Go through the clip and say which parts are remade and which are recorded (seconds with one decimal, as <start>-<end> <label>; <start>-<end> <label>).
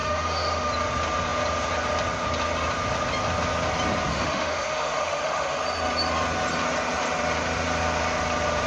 0.0-0.7 remade; 0.7-4.1 recorded; 4.1-5.6 remade; 5.6-8.7 recorded